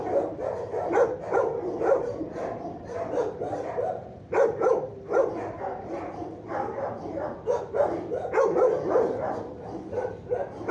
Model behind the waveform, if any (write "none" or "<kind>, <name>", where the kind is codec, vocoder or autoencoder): vocoder, BigVGAN v2